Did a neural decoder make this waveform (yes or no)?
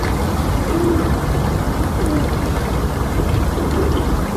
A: no